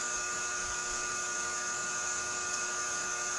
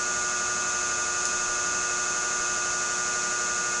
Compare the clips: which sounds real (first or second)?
second